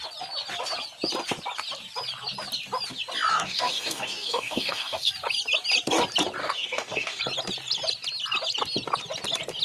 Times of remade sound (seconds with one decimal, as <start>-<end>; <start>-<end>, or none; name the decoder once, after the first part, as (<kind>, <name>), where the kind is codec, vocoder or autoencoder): 3.3-5.1 (codec, DAC); 6.4-7.2